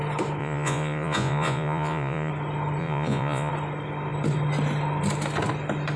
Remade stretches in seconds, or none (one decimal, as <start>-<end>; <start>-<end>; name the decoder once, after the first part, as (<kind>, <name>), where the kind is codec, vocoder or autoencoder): 0.4-2.3 (vocoder, Vocos); 2.8-3.5